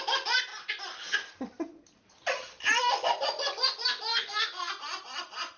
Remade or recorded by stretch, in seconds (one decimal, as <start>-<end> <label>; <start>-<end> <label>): 0.0-4.1 recorded; 4.1-4.7 remade; 4.7-5.6 recorded